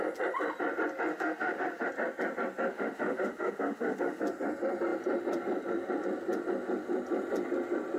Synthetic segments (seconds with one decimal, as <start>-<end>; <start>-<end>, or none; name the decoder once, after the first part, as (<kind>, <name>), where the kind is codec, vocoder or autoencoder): 1.1-1.9 (autoencoder, DAC-VAE); 2.7-4.2